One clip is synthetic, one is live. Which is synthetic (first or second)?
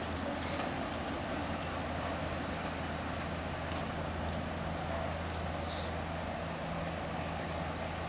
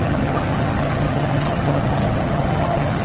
second